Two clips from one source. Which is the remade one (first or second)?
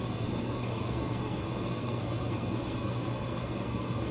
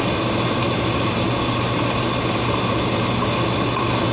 first